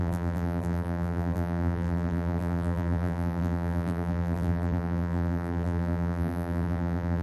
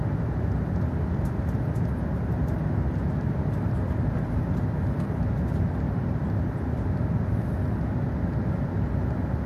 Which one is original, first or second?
second